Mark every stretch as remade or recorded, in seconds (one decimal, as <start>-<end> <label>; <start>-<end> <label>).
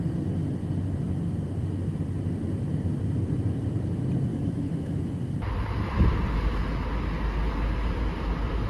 0.0-4.3 recorded; 4.3-5.1 remade; 5.1-8.7 recorded